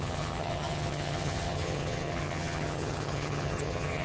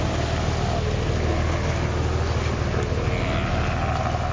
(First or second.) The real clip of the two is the second